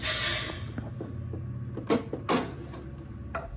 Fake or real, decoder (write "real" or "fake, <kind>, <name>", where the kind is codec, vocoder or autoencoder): real